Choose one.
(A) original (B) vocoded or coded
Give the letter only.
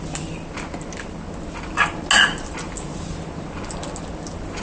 A